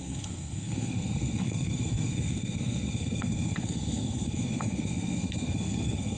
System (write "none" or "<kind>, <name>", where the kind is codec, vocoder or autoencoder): codec, SNAC